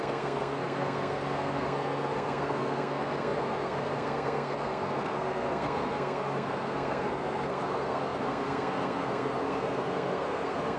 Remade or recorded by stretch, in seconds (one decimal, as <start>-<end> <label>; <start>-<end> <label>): 0.0-10.8 remade